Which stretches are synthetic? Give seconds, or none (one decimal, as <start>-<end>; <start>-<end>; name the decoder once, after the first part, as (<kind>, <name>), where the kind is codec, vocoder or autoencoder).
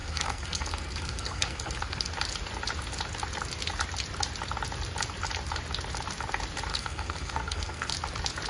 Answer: 0.0-2.1 (codec, SNAC); 6.7-7.9